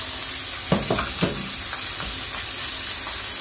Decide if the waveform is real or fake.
real